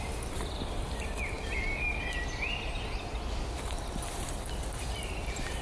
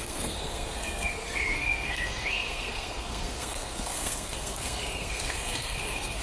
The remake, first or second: second